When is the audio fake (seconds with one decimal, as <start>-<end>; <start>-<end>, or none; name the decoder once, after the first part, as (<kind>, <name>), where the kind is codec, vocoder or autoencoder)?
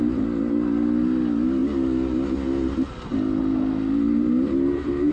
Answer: none